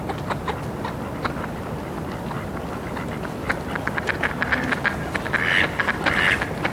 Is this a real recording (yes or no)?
yes